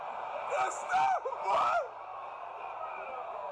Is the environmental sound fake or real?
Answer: real